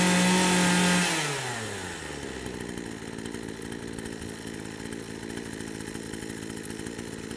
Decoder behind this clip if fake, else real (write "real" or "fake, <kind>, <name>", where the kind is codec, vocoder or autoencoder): real